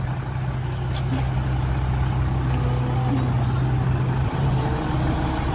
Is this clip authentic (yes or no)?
yes